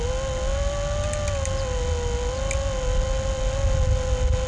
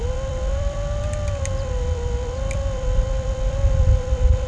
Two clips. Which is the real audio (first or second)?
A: first